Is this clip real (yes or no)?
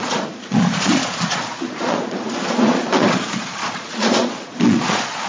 no